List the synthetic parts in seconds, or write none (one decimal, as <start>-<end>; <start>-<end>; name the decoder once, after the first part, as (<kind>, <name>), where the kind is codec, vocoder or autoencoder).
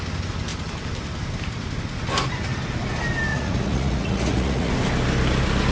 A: 3.3-4.7 (vocoder, Vocos)